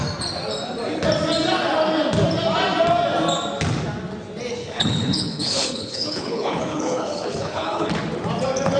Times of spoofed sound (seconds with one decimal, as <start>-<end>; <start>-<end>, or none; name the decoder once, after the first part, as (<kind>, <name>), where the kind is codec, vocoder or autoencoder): 4.6-7.9 (codec, HILCodec)